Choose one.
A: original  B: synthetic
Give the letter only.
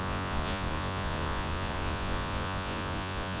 B